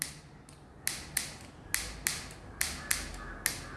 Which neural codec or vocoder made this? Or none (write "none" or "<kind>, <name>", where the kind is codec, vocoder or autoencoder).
none